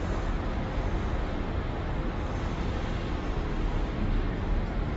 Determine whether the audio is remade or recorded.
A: recorded